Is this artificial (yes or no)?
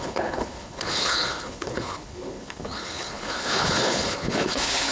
yes